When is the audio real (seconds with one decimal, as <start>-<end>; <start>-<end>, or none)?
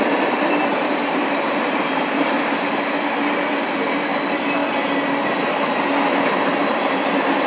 0.0-0.7; 2.5-7.5